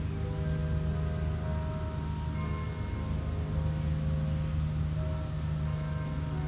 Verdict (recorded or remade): recorded